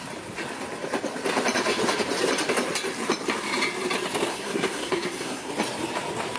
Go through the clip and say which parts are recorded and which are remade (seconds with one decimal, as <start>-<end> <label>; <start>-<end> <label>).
0.0-4.3 recorded; 4.3-5.5 remade; 5.5-6.4 recorded